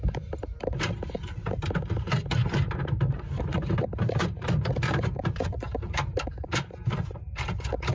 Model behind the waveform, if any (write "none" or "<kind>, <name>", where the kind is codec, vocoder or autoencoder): vocoder, BigVGAN v2